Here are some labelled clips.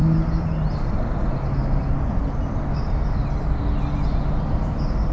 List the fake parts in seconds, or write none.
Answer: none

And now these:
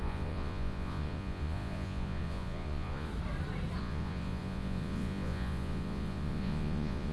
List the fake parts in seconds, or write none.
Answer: 0.0-3.1; 3.8-7.1

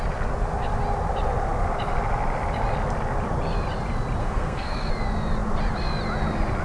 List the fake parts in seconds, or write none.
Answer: 4.2-4.9

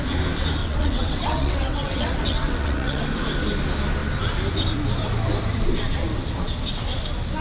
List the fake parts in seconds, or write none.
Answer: 0.6-3.0

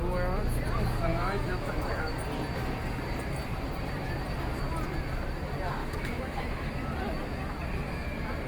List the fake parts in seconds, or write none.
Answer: 1.1-2.1; 5.8-6.7

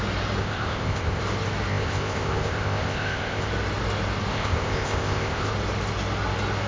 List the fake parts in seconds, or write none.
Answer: 0.4-1.2; 1.7-3.5; 4.3-5.5